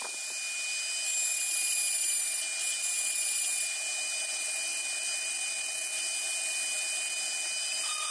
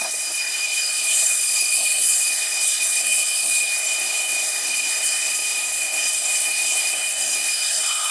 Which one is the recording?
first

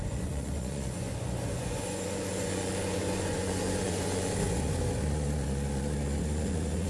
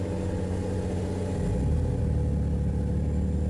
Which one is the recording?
second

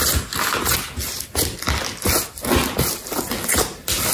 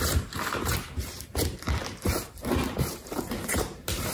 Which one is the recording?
first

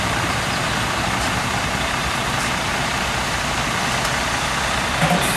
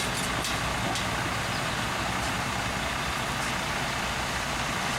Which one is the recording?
second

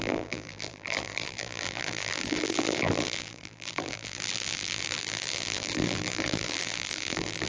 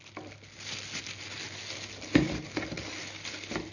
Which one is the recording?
second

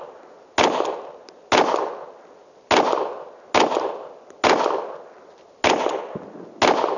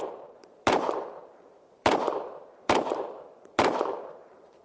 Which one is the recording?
first